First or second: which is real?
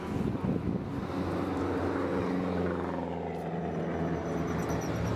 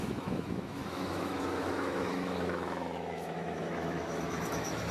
first